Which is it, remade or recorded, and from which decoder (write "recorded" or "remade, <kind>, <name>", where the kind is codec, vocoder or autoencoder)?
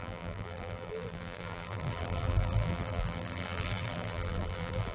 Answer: remade, vocoder, BigVGAN v2